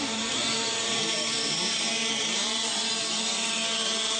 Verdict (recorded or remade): remade